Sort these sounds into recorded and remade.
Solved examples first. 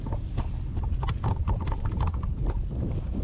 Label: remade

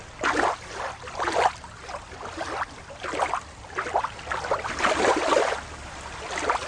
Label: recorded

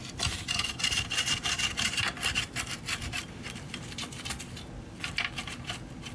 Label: remade